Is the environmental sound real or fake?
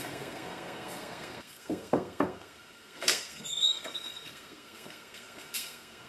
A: fake